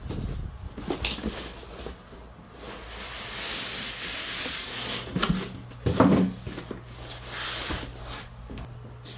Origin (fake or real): real